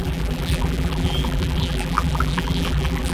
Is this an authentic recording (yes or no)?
no